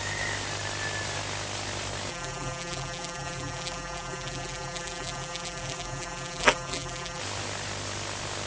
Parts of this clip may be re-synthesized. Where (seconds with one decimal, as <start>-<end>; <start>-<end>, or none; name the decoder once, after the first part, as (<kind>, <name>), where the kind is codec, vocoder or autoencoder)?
2.1-7.2 (vocoder, BigVGAN v2)